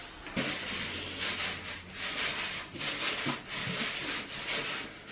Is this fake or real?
real